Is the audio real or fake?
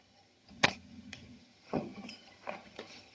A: fake